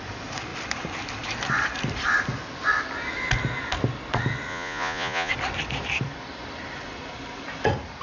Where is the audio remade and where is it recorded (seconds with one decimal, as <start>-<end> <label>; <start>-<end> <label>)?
0.0-4.5 recorded; 4.5-5.3 remade; 5.3-8.0 recorded